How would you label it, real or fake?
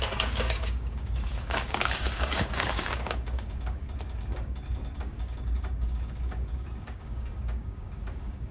fake